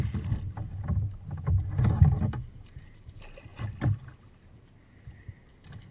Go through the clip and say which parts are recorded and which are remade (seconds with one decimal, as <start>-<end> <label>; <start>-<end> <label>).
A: 0.0-5.9 recorded